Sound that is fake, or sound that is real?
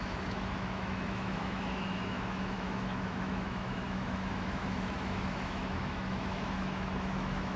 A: fake